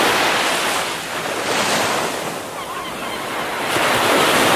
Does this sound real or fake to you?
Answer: real